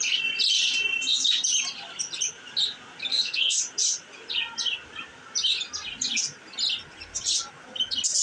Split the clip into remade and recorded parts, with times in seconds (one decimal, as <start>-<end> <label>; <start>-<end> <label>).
0.0-3.1 recorded; 3.1-3.6 remade; 3.6-8.2 recorded